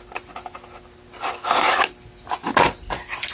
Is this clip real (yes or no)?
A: yes